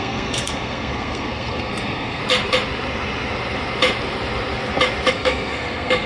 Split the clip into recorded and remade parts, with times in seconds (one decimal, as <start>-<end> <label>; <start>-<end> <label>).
0.0-2.2 remade; 2.2-5.1 recorded; 5.1-6.1 remade